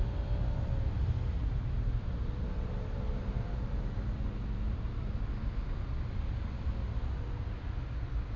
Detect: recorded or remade recorded